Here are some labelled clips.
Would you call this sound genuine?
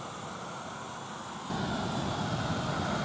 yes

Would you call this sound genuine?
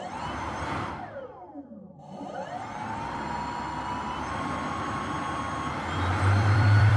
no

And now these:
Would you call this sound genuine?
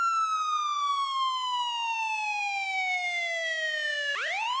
yes